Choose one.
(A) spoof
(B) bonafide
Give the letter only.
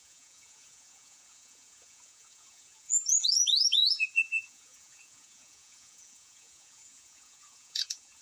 A